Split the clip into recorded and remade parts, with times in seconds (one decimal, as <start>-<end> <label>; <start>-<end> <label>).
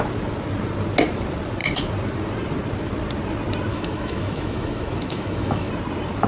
0.0-3.7 recorded; 3.7-5.7 remade; 5.7-6.3 recorded